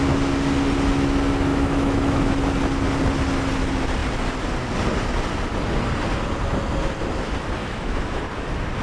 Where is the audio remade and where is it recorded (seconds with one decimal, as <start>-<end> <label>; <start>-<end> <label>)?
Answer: 0.0-1.5 recorded; 1.5-2.3 remade; 2.3-7.6 recorded; 7.6-8.2 remade; 8.2-8.8 recorded